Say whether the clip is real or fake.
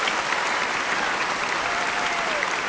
real